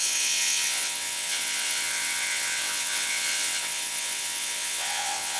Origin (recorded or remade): remade